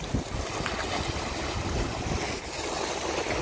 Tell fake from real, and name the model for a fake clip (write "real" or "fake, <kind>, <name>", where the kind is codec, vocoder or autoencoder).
real